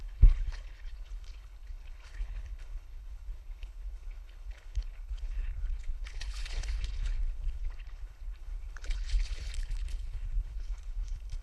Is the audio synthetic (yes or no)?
yes